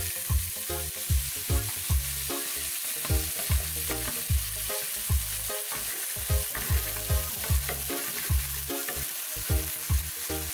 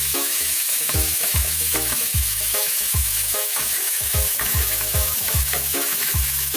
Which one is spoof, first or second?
second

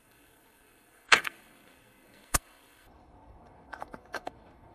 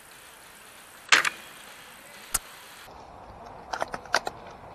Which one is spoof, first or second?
first